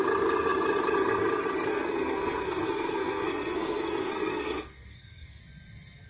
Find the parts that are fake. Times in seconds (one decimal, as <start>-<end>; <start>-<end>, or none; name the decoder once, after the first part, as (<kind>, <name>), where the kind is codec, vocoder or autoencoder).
1.7-5.4 (codec, SNAC)